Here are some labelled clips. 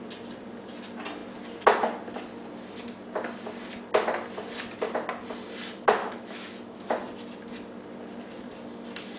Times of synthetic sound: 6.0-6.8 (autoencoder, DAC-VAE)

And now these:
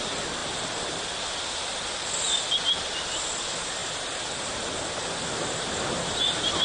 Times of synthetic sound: none

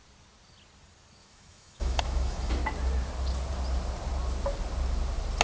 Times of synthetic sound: 1.2-2.5 (autoencoder, DAC-VAE)

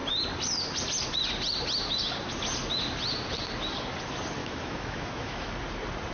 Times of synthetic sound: 4.4-5.5 (autoencoder, DAC-VAE)

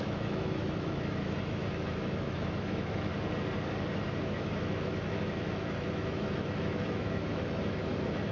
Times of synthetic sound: 0.0-3.1 (autoencoder, DAC-VAE); 4.2-8.3

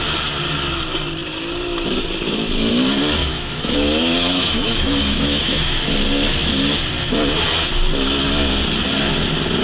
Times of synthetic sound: 3.2-5.9 (autoencoder, DAC-VAE)

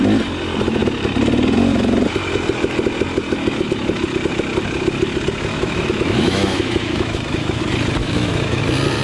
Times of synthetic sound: 5.5-7.6 (autoencoder, DAC-VAE); 8.0-8.6

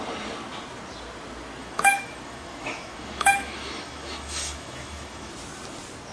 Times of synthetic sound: 1.6-5.3 (autoencoder, DAC-VAE)